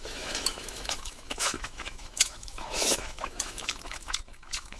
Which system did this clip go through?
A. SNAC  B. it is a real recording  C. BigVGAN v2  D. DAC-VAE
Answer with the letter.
D